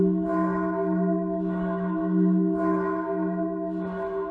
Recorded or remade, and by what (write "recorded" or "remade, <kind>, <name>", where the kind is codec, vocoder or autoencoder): remade, autoencoder, DAC-VAE